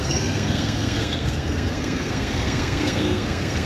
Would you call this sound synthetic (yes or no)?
yes